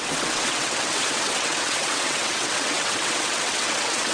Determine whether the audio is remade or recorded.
remade